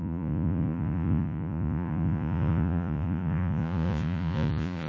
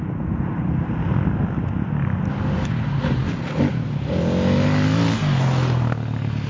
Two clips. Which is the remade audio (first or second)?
first